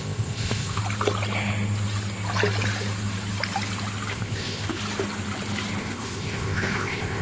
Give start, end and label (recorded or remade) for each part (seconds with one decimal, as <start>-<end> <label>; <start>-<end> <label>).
0.0-0.8 remade; 0.8-4.1 recorded; 4.1-4.8 remade; 4.8-5.8 recorded; 5.8-7.2 remade